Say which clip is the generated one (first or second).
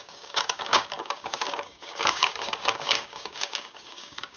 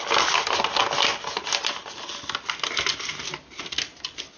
first